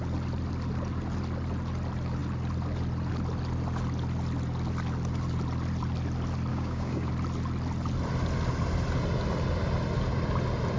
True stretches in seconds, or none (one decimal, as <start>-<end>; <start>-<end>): 0.0-6.5; 7.1-10.8